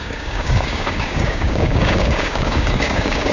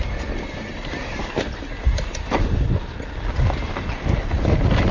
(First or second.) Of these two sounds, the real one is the second